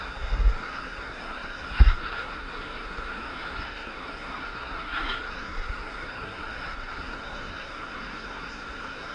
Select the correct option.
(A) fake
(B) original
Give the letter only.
A